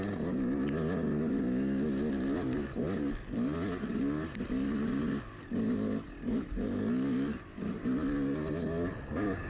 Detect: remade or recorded recorded